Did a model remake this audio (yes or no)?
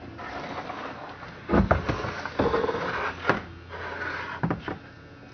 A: no